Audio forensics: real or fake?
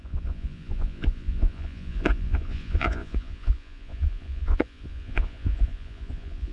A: fake